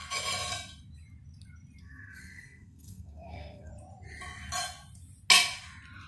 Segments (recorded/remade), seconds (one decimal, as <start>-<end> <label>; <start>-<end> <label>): 0.0-1.8 recorded; 1.8-3.7 remade; 3.7-6.1 recorded